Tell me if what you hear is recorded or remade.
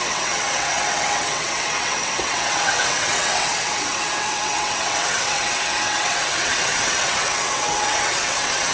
remade